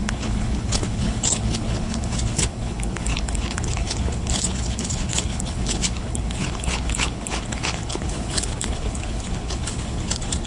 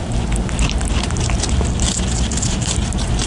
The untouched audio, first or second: second